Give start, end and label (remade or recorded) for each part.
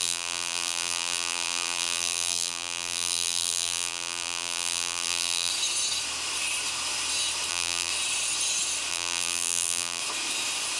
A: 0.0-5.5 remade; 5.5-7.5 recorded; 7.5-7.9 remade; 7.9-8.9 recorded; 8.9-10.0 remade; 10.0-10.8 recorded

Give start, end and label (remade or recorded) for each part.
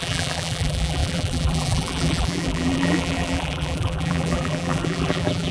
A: 0.0-5.5 remade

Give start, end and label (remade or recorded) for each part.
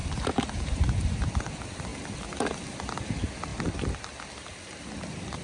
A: 0.0-1.3 remade; 1.3-5.4 recorded